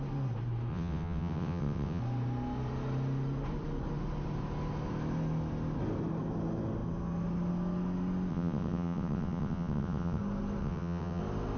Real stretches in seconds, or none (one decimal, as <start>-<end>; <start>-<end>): 0.0-0.7; 2.0-8.3; 10.2-10.6; 11.2-11.6